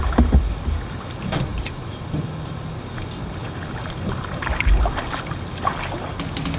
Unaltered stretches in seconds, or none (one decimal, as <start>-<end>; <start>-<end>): 0.0-1.5; 2.9-6.6